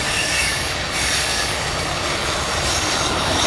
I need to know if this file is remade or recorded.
remade